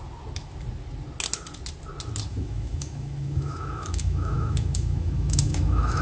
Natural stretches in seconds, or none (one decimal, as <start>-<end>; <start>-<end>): 0.0-2.3